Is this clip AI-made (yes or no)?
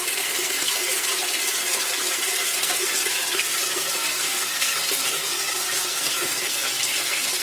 yes